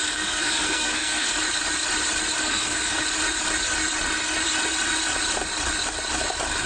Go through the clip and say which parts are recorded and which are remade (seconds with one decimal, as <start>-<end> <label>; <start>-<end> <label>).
0.0-1.3 remade; 1.3-2.4 recorded; 2.4-3.0 remade; 3.0-6.7 recorded